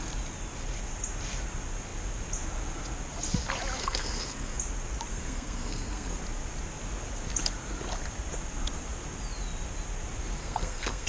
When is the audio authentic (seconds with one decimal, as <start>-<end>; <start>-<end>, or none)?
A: 0.0-3.8; 4.6-5.1; 6.2-10.4